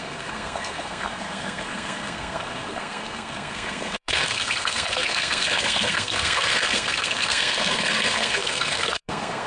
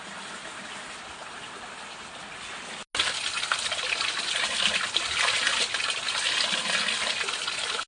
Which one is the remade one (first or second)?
first